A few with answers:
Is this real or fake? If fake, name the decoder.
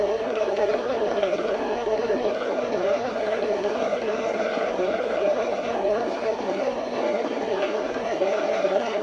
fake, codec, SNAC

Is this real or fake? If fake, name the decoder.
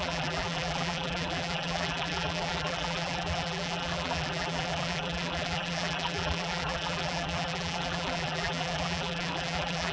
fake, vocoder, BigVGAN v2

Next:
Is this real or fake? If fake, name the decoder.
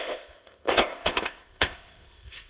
fake, codec, ZipCodec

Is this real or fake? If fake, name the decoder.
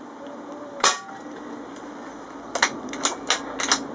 real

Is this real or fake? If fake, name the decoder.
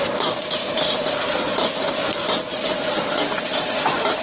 real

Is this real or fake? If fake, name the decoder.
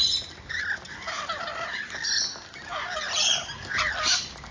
real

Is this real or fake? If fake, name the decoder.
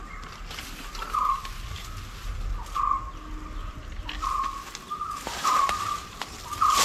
real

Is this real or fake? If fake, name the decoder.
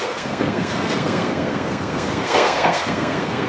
fake, codec, SNAC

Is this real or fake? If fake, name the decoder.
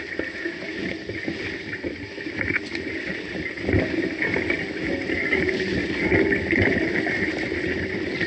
real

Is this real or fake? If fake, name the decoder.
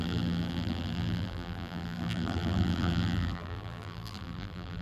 fake, vocoder, BigVGAN v2